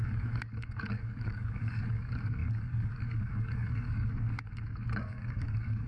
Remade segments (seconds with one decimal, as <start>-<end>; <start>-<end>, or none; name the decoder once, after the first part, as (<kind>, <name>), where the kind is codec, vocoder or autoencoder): 0.0-5.9 (codec, DAC)

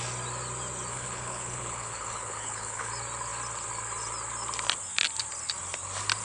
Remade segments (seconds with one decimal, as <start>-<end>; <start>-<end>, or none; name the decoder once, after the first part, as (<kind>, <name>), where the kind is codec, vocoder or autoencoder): 0.9-2.9 (codec, HILCodec)

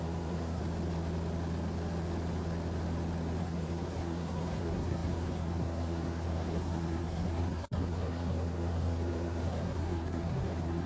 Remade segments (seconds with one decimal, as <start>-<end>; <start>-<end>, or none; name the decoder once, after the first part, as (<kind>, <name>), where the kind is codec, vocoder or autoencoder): 0.0-0.6 (codec, SNAC); 3.4-10.9

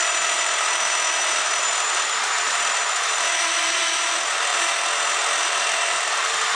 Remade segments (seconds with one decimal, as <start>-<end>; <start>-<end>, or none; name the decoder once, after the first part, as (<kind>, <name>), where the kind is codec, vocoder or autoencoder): 0.0-4.5 (vocoder, BigVGAN v2); 5.1-6.5

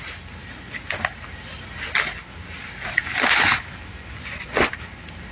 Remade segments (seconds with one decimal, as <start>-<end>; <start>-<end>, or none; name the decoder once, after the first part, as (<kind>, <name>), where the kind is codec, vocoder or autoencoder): 3.9-4.7 (vocoder, Vocos)